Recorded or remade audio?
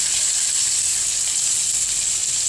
remade